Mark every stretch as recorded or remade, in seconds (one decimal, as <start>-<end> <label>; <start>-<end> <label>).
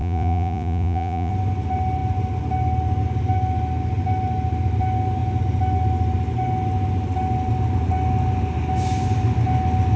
0.0-1.3 remade; 1.3-10.0 recorded